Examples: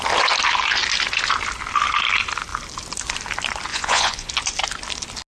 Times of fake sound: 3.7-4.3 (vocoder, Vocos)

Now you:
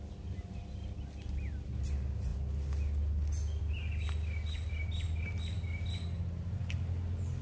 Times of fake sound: none

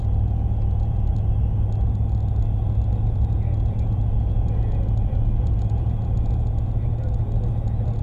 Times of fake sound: 0.0-1.1 (vocoder, Vocos); 3.0-8.0